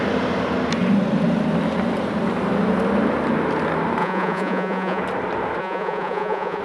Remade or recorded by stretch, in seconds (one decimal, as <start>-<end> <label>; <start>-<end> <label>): 0.0-4.0 recorded; 4.0-5.0 remade; 5.0-5.6 recorded; 5.6-6.6 remade